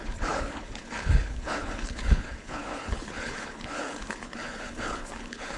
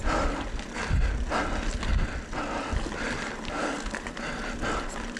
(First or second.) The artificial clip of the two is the first